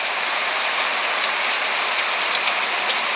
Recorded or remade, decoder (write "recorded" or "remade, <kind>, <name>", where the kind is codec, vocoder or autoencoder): recorded